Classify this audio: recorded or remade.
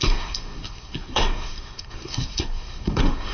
remade